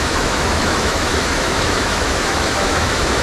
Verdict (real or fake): fake